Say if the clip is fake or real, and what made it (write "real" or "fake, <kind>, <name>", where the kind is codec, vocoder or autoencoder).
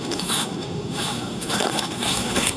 fake, codec, SNAC